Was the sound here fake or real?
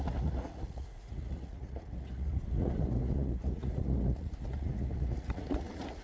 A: fake